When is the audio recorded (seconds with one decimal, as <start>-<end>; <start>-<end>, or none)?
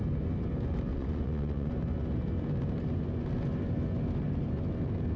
0.0-0.9; 1.7-5.2